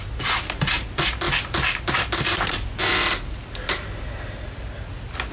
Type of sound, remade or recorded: recorded